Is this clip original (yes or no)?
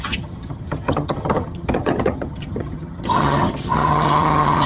no